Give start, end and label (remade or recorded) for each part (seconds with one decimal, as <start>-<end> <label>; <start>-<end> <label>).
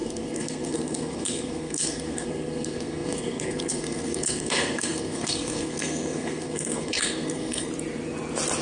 0.0-7.7 remade; 7.7-8.6 recorded